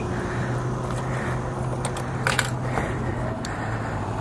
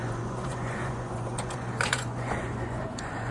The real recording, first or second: first